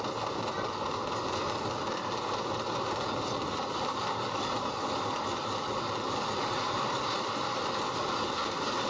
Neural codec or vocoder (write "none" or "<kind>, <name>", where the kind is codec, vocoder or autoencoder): none